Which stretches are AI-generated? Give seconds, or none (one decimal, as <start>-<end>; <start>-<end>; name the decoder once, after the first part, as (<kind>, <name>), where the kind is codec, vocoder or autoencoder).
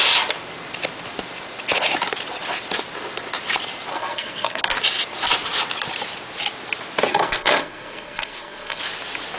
3.9-4.6 (codec, SNAC); 7.1-8.8